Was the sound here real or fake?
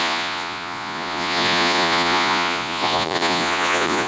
fake